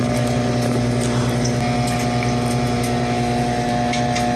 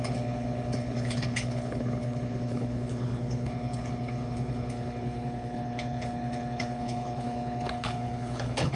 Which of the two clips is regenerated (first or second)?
second